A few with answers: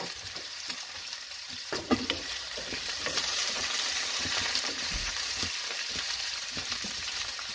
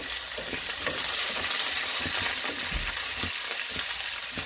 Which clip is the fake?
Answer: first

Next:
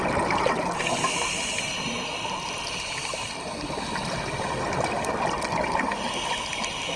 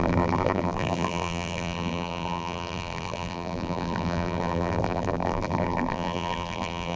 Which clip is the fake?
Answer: second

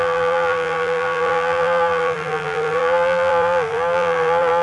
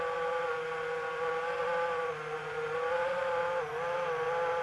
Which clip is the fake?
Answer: first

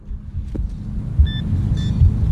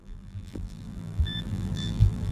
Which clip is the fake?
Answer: second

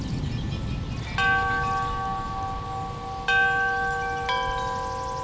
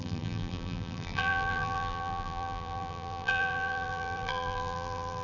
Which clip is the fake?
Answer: second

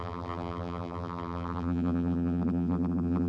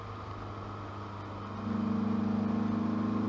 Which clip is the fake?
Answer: first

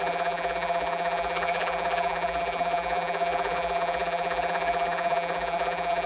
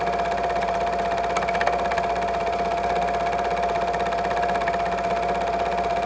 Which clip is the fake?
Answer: first